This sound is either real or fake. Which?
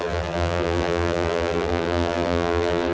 fake